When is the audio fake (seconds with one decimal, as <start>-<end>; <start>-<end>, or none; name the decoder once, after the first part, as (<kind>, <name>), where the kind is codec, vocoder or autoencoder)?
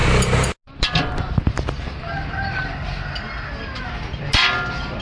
none